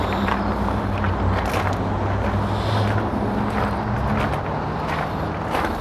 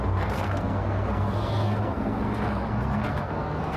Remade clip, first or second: second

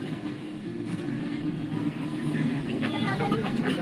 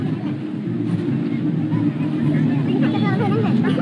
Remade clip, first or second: first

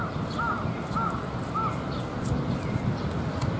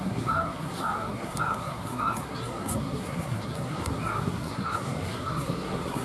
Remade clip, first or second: second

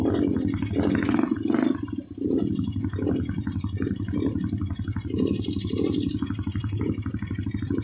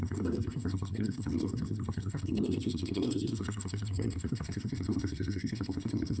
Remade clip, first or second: second